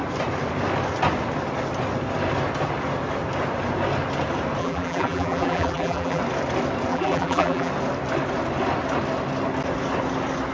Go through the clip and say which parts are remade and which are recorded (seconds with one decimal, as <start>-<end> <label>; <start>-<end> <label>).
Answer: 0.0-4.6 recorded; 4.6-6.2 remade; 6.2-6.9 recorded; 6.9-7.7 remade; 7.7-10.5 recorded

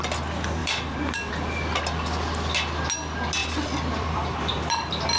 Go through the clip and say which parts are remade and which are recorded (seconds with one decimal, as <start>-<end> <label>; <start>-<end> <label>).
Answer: 0.0-0.6 recorded; 0.6-1.3 remade; 1.3-3.4 recorded; 3.4-5.2 remade

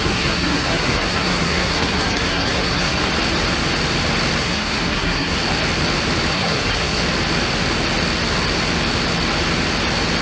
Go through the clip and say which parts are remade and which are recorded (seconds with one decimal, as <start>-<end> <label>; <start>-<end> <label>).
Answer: 0.0-3.1 remade; 3.1-4.4 recorded; 4.4-5.4 remade; 5.4-6.3 recorded; 6.3-7.0 remade; 7.0-10.2 recorded

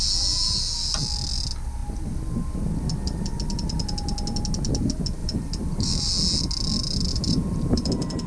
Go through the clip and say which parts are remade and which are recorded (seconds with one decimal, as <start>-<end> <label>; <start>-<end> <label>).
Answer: 0.0-5.2 recorded; 5.2-6.1 remade; 6.1-7.1 recorded; 7.1-7.9 remade; 7.9-8.3 recorded

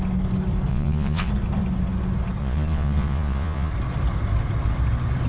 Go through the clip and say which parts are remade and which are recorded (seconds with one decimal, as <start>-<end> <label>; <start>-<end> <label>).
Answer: 0.0-0.7 recorded; 0.7-1.3 remade; 1.3-2.4 recorded; 2.4-3.7 remade; 3.7-5.3 recorded

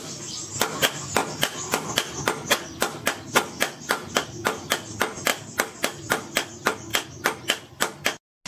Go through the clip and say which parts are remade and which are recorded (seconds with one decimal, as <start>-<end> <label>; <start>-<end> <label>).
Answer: 0.0-5.3 recorded; 5.3-6.0 remade; 6.0-8.5 recorded